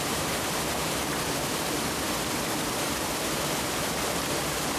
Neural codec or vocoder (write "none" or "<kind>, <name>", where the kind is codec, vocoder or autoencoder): none